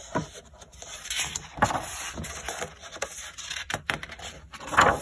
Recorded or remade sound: remade